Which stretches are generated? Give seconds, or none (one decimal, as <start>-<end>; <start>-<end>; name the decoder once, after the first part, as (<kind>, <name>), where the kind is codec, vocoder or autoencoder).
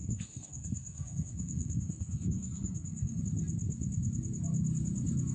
0.0-3.2 (codec, SNAC)